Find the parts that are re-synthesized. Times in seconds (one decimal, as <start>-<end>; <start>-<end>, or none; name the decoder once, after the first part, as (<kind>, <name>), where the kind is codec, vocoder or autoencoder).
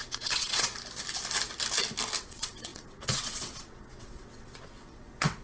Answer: 0.0-0.7 (vocoder, WaveNeXt); 2.2-5.4